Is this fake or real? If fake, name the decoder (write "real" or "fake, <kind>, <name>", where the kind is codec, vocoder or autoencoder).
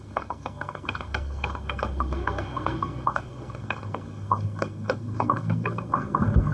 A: fake, codec, SNAC